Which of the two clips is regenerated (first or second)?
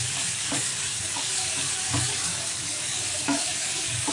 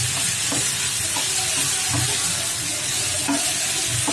first